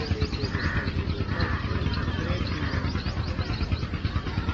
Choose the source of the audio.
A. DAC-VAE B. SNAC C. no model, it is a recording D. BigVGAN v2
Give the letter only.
D